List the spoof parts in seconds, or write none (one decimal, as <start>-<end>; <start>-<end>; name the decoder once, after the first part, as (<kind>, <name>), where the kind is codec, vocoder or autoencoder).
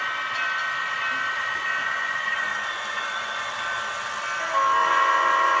1.8-3.5 (vocoder, Vocos); 4.8-5.6